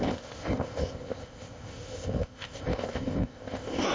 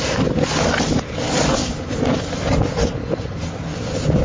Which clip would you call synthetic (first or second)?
first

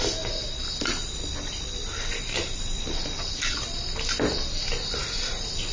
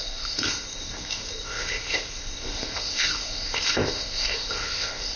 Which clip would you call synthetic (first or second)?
second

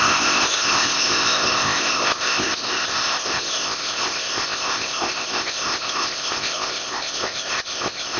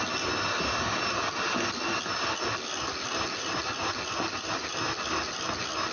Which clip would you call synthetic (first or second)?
first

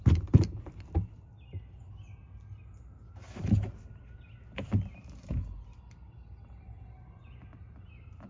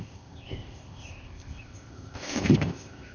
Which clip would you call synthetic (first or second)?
second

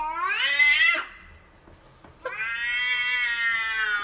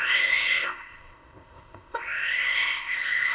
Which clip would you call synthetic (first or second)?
second